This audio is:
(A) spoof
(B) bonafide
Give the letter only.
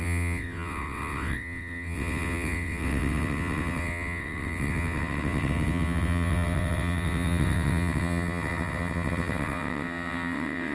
A